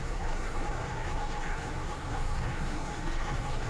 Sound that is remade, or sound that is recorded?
remade